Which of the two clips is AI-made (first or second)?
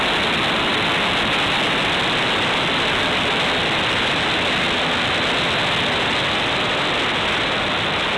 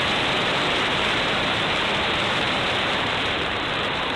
second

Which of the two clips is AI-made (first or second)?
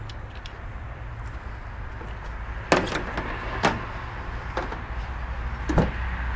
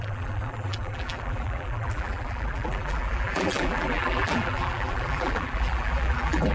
second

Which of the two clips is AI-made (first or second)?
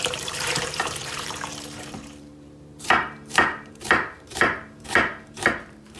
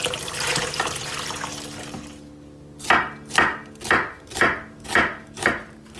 first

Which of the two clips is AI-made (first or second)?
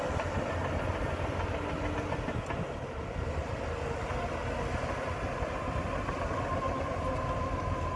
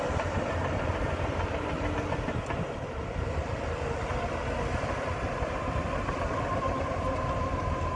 second